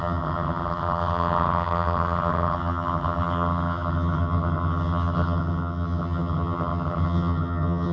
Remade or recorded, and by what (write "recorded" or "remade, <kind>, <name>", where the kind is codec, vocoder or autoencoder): remade, vocoder, HiFi-GAN